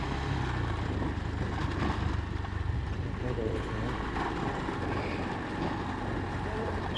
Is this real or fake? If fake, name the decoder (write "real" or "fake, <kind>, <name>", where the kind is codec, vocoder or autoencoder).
real